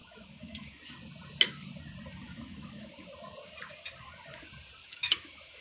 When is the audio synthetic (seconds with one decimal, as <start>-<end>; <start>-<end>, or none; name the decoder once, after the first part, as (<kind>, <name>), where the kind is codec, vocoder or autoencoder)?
0.0-0.8 (autoencoder, DAC-VAE); 2.2-2.9; 4.8-5.6